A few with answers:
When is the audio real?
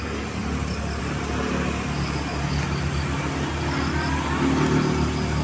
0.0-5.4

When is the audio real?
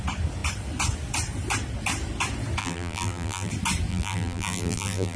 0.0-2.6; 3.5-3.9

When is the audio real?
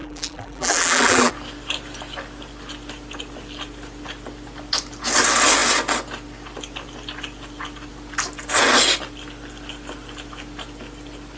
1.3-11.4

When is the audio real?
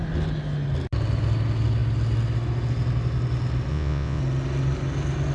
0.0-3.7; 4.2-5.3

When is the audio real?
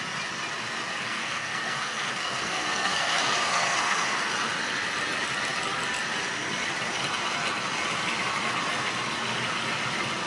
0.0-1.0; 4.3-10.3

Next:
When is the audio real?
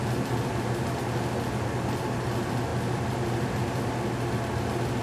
0.0-5.0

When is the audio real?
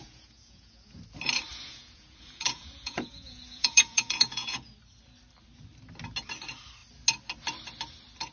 1.0-1.5; 4.7-8.3